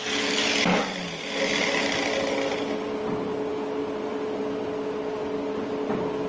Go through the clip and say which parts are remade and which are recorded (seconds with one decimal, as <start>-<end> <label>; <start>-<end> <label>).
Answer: 0.0-6.3 recorded